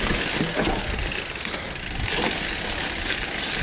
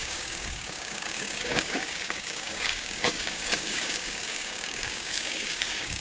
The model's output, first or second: second